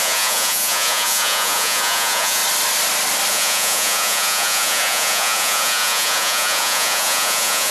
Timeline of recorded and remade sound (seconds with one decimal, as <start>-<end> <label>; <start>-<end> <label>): 0.0-2.4 remade; 2.4-3.3 recorded; 3.3-7.7 remade